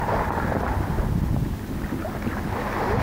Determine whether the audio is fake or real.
real